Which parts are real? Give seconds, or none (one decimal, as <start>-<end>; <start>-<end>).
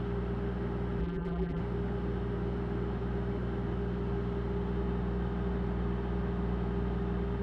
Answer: 0.0-1.0; 1.6-7.4